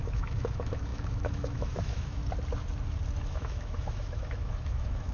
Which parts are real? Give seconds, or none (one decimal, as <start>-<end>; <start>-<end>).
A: 2.2-3.2